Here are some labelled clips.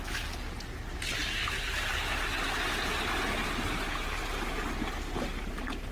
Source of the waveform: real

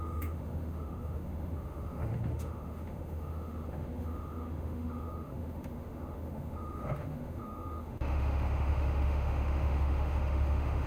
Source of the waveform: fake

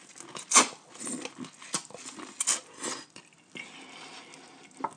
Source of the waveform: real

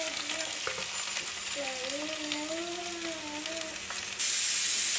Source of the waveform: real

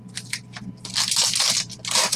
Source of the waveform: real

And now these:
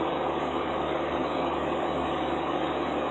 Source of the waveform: fake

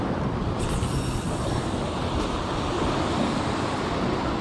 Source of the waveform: real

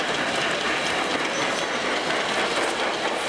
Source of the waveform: real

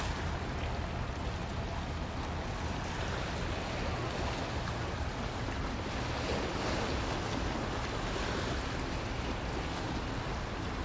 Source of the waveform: real